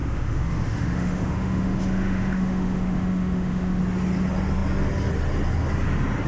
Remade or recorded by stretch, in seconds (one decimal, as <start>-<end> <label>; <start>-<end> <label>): 0.0-3.8 remade; 3.8-6.3 recorded